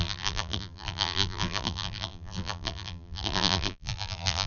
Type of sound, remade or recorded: remade